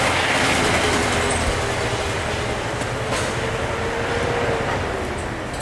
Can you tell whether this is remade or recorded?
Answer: recorded